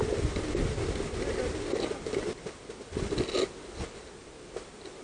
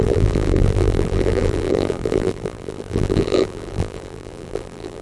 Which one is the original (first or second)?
first